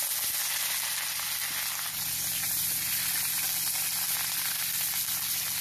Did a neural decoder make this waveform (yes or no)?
no